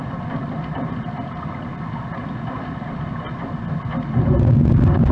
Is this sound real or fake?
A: real